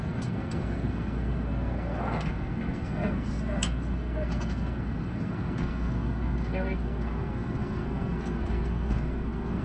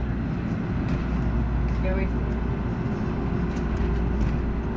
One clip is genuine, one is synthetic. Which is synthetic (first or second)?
first